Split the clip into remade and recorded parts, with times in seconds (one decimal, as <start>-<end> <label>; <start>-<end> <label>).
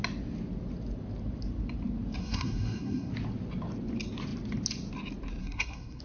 0.0-2.2 recorded; 2.2-3.1 remade; 3.1-5.4 recorded; 5.4-6.0 remade